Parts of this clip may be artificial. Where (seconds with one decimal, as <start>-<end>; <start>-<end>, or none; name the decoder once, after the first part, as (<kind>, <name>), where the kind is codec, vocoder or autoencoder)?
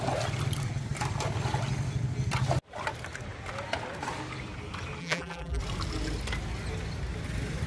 5.0-5.6 (vocoder, BigVGAN v2)